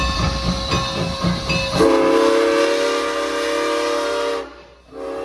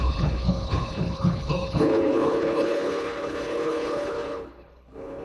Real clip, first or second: first